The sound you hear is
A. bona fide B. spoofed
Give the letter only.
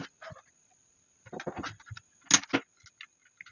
A